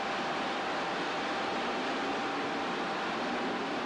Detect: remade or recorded recorded